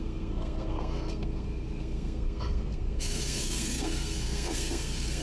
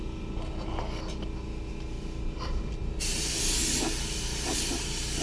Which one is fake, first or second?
first